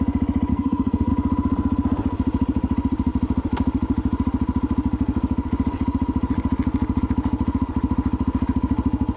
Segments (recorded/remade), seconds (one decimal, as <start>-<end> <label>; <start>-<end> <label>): 0.0-0.5 recorded; 0.5-1.1 remade; 1.1-9.2 recorded